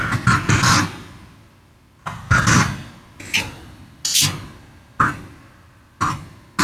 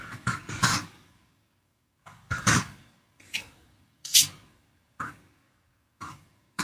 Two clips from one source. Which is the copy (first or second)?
second